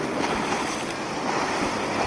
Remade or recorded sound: remade